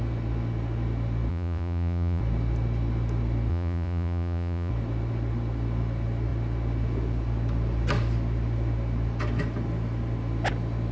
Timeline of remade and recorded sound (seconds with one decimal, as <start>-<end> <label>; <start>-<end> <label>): 0.0-1.3 recorded; 1.3-2.2 remade; 2.2-3.5 recorded; 3.5-4.7 remade; 4.7-10.9 recorded